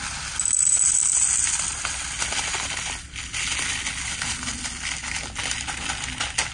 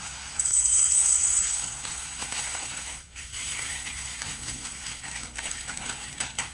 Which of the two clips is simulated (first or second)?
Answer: second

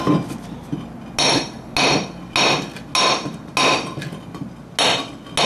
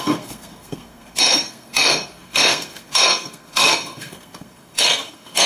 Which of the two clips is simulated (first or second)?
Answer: second